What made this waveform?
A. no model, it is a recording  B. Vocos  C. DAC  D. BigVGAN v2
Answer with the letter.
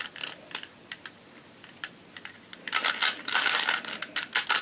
A